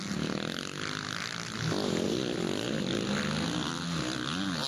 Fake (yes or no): no